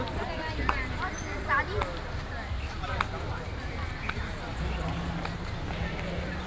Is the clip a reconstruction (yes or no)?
no